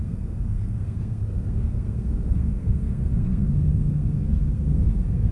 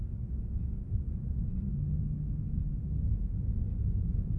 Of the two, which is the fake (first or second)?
first